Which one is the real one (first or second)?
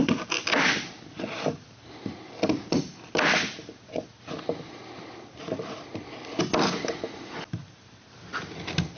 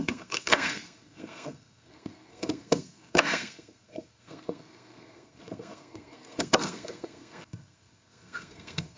first